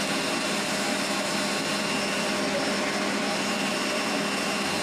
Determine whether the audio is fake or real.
real